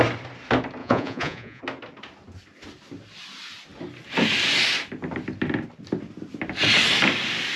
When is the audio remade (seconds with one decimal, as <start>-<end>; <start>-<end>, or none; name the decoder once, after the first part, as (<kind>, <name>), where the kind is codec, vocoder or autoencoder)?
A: 0.8-1.6 (vocoder, Vocos)